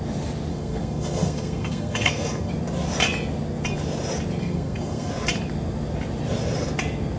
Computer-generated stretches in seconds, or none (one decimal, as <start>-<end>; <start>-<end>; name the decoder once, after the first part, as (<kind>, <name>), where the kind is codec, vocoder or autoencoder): 0.5-2.5 (codec, SNAC); 4.4-5.1